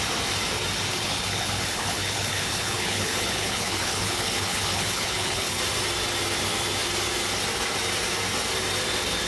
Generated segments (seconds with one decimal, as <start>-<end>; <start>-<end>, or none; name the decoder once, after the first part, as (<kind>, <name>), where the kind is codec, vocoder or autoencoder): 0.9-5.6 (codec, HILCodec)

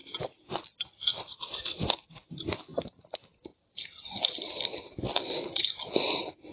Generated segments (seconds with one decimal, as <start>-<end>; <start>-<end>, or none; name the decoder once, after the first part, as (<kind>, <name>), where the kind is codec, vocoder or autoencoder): 2.7-5.7 (vocoder, BigVGAN v2)

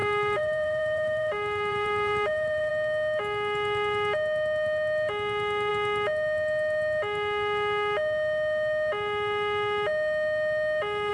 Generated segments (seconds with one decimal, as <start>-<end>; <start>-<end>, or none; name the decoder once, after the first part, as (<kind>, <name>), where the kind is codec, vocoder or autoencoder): 0.0-2.7 (vocoder, BigVGAN v2)